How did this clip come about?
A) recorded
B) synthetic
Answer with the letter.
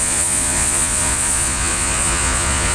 B